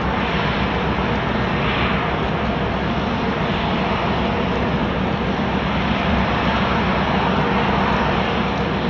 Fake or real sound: real